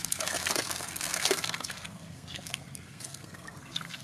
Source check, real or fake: fake